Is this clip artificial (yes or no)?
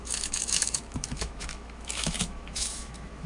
yes